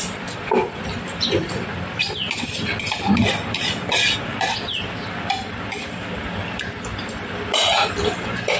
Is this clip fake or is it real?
real